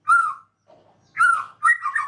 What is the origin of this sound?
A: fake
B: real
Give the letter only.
B